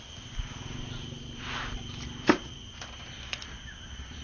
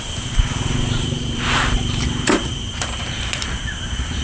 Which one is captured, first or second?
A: first